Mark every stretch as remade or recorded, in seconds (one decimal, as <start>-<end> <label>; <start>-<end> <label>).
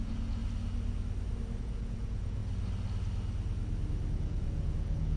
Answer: 0.0-0.4 remade; 0.4-1.6 recorded; 1.6-2.4 remade; 2.4-4.1 recorded; 4.1-5.2 remade